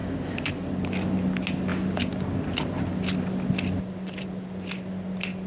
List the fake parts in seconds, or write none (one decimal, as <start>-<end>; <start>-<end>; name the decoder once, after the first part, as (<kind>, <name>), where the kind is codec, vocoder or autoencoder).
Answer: none